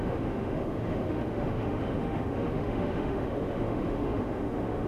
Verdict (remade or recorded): remade